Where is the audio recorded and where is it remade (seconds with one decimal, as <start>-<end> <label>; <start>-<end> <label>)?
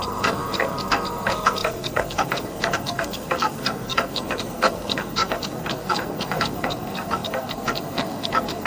0.0-8.7 remade